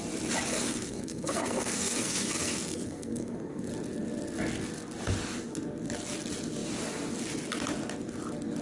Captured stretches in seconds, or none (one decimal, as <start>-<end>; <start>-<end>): 0.0-0.5; 3.7-8.6